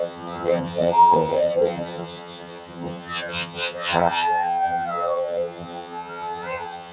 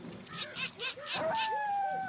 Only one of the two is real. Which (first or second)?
second